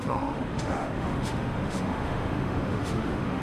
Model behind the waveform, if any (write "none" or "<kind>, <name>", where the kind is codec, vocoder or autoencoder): autoencoder, DAC-VAE